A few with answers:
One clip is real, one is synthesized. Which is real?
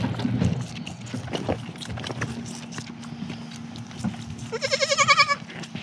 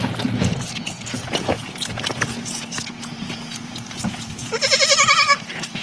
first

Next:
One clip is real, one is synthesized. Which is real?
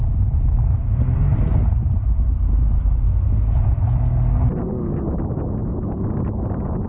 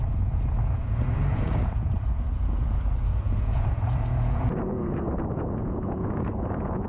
first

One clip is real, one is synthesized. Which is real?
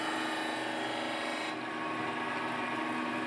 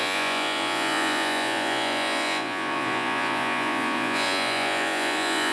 first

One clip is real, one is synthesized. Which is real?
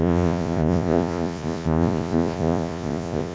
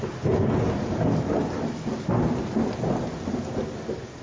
second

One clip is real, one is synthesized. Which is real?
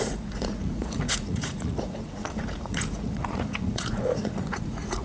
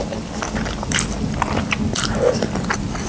second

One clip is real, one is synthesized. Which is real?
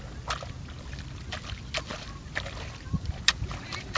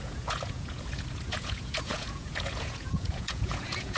first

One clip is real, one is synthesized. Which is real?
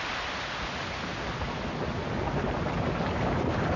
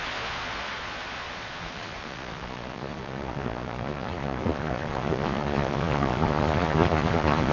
first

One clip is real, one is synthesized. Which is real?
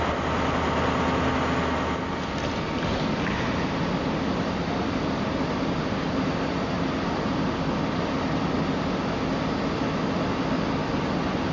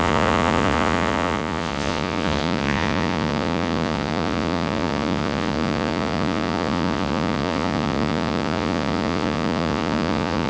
first